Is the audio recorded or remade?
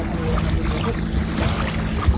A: recorded